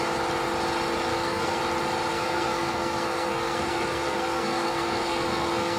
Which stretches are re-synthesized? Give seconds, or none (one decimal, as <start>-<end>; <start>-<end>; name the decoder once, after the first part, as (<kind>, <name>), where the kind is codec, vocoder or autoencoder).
1.1-1.6 (codec, SNAC); 2.1-5.8

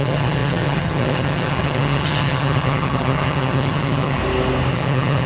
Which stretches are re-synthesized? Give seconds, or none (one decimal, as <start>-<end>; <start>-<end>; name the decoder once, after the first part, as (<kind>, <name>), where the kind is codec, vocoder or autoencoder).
0.0-4.2 (vocoder, HiFi-GAN); 4.7-5.3

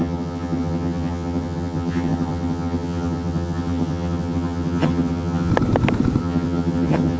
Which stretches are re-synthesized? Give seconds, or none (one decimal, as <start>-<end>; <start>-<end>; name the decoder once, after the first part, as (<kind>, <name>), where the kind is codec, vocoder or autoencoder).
0.0-5.5 (vocoder, HiFi-GAN); 6.2-7.2

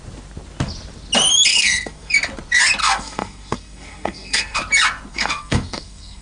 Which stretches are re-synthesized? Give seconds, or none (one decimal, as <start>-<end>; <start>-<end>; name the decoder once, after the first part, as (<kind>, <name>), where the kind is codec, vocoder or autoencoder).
1.5-2.1 (codec, SNAC); 2.8-4.6; 5.1-6.2

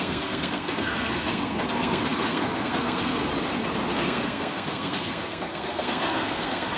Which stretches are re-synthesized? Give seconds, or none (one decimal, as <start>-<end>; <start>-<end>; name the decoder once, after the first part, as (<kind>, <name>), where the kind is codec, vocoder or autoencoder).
0.0-3.3 (codec, SNAC); 3.9-6.8